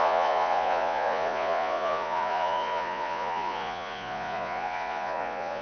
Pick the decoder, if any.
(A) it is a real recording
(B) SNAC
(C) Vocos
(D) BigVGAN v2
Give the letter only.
C